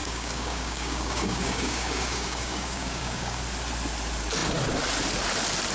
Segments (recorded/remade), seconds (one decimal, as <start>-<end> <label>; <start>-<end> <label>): 0.0-3.4 remade; 3.4-5.7 recorded